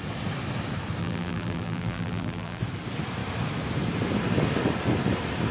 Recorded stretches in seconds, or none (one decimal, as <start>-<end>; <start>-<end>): 0.0-1.0; 2.6-5.5